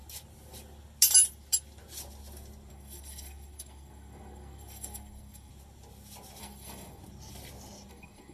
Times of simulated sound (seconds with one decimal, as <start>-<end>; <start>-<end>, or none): 2.7-5.5; 6.4-7.0; 7.9-8.3